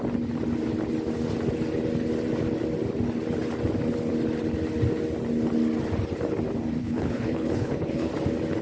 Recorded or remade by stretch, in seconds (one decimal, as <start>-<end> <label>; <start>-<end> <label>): 0.0-6.8 recorded; 6.8-8.1 remade; 8.1-8.6 recorded